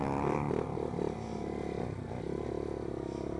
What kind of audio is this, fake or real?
real